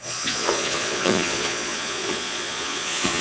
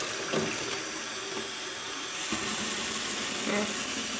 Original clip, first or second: second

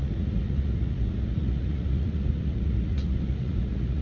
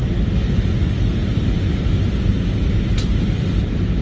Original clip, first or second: second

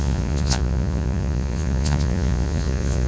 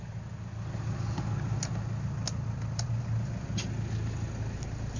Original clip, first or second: second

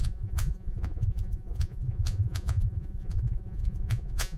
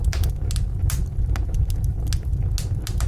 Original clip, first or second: second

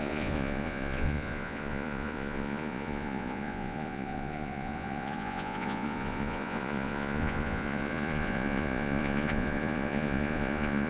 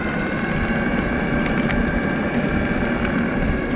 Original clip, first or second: second